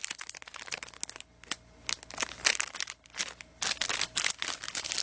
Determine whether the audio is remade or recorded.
recorded